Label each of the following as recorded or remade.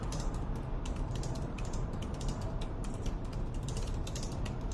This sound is remade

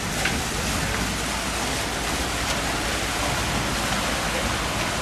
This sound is recorded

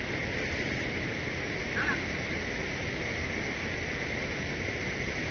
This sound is remade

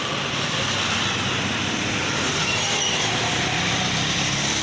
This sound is remade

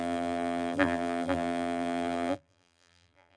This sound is remade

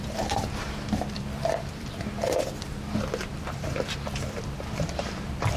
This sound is remade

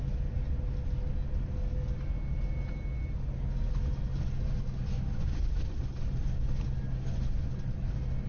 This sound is recorded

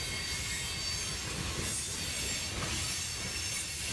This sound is recorded